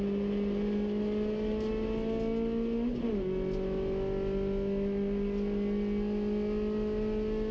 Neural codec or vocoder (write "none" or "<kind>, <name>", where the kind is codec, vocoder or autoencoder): none